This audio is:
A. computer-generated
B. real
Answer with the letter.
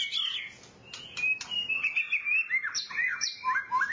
B